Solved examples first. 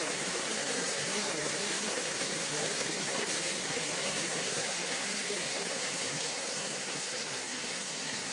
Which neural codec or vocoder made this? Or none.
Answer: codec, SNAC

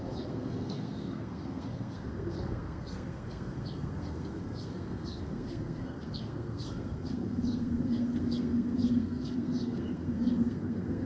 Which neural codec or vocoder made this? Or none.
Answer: codec, SNAC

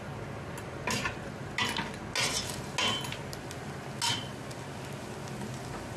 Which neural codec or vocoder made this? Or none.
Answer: none